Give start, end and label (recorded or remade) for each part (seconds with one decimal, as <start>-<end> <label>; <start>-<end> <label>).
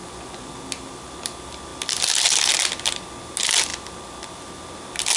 0.0-0.5 remade; 0.5-5.2 recorded